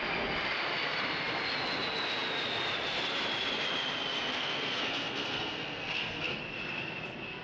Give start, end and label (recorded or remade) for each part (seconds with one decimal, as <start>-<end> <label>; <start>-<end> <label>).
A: 0.0-4.3 recorded; 4.3-6.4 remade; 6.4-7.4 recorded